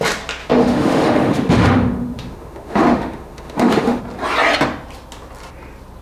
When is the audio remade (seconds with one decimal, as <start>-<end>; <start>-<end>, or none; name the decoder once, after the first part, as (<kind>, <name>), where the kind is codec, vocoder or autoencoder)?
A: 0.4-4.0 (autoencoder, DAC-VAE)